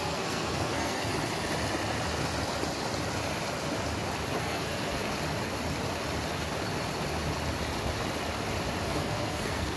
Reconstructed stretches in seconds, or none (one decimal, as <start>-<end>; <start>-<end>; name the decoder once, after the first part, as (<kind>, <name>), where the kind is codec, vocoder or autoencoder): 0.0-1.1 (codec, SNAC); 4.4-5.0; 8.9-9.8